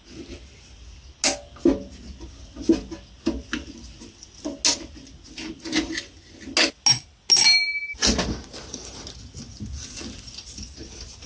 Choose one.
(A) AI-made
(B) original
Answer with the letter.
B